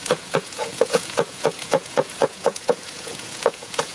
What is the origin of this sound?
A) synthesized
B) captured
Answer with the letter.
A